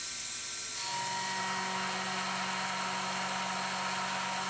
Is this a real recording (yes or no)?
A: yes